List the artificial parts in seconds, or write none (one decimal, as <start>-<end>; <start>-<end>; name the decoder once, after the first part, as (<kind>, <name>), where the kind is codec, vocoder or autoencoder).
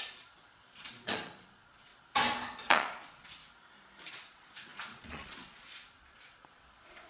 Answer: 0.0-1.9 (vocoder, Vocos); 2.6-3.4; 4.1-7.1